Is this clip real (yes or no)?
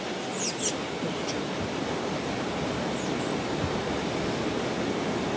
yes